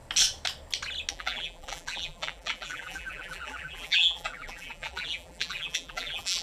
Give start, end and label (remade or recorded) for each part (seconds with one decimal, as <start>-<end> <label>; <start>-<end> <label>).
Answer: 0.0-1.1 recorded; 1.1-6.4 remade